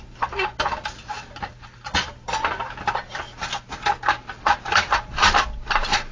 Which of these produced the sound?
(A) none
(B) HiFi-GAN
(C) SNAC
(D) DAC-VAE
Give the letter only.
A